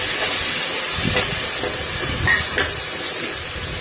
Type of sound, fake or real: real